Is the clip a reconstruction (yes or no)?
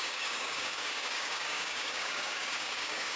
yes